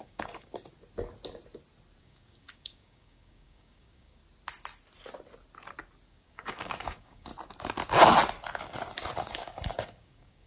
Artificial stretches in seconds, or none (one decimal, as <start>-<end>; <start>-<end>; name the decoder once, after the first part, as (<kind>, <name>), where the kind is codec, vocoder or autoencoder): 0.0-0.5 (codec, DAC); 2.0-4.2; 6.1-7.3; 9.2-10.5